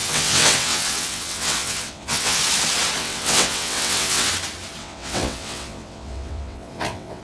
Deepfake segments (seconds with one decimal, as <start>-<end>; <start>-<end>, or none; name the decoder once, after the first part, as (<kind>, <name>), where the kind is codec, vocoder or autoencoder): 0.0-2.4 (vocoder, WaveNeXt); 3.0-4.3; 4.8-7.2